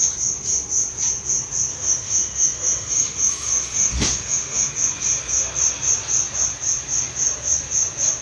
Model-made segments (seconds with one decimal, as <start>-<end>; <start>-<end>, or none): 1.7-4.7